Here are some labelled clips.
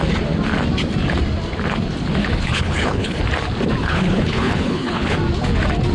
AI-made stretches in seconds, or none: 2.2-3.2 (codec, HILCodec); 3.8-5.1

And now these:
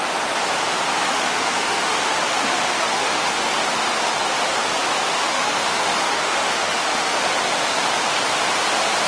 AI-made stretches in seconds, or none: 0.9-3.3 (autoencoder, DAC-VAE); 5.2-7.3

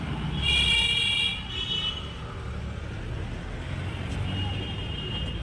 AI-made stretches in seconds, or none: none